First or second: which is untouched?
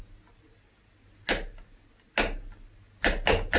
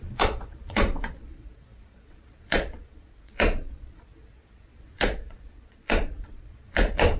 first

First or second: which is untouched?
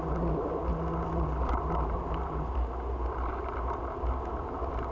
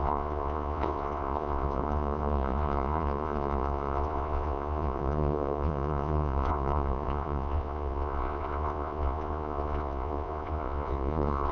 first